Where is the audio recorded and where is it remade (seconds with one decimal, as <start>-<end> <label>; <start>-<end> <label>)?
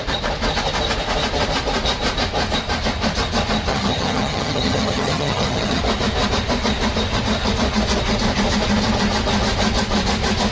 0.0-3.7 recorded; 3.7-5.8 remade; 5.8-10.5 recorded